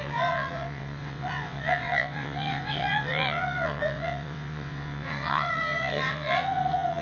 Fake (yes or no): yes